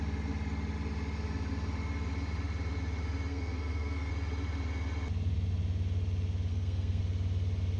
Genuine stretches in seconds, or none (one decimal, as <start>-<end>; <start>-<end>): 0.0-3.3; 4.1-6.5; 7.0-7.8